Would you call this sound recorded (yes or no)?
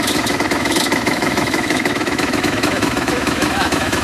no